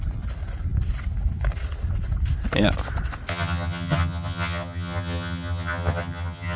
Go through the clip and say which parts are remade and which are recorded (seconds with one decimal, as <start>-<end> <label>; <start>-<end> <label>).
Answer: 0.0-3.3 recorded; 3.3-6.6 remade

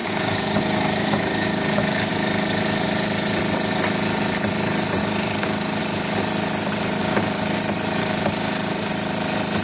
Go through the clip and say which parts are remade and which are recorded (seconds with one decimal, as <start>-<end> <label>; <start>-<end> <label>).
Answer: 0.0-2.1 remade; 2.1-5.0 recorded; 5.0-5.8 remade; 5.8-7.0 recorded; 7.0-7.6 remade; 7.6-8.0 recorded; 8.0-8.9 remade; 8.9-9.6 recorded

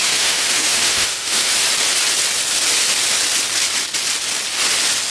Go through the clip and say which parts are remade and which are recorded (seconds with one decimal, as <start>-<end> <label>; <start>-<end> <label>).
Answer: 0.0-1.5 remade; 1.5-5.1 recorded

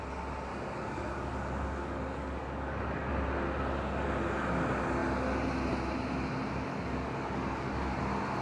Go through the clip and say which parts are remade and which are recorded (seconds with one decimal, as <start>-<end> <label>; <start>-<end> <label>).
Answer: 0.0-0.5 recorded; 0.5-3.1 remade; 3.1-6.7 recorded; 6.7-8.0 remade; 8.0-8.4 recorded

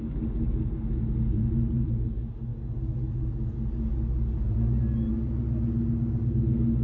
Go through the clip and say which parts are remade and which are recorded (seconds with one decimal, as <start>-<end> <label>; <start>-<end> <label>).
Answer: 0.0-1.3 recorded; 1.3-2.1 remade; 2.1-6.8 recorded

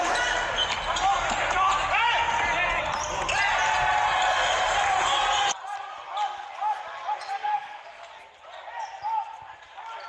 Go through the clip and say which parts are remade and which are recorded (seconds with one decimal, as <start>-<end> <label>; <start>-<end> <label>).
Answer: 0.0-7.5 recorded; 7.5-8.1 remade; 8.1-10.1 recorded

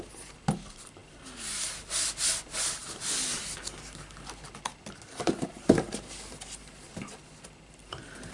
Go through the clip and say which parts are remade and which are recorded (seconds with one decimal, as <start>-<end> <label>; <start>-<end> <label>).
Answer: 0.0-8.3 recorded